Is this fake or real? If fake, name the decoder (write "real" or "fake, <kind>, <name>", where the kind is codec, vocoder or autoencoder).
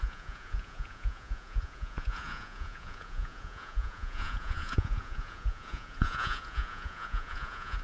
fake, vocoder, Vocos